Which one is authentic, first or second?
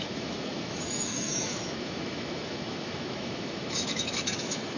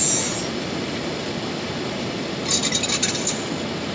second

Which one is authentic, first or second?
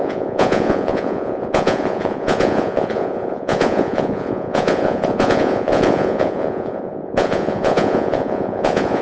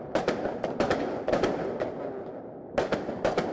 second